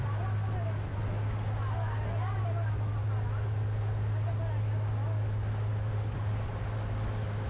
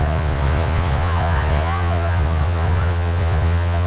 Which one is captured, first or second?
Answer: first